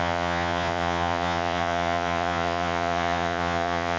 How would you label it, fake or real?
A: fake